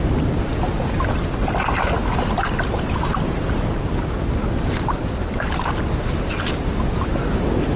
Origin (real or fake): real